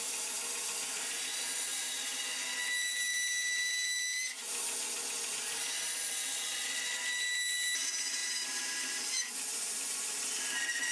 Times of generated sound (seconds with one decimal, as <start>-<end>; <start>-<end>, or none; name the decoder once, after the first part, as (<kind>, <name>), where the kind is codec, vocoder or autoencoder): 1.7-2.2 (vocoder, BigVGAN v2); 8.2-8.7